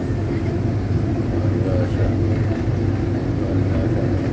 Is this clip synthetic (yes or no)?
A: no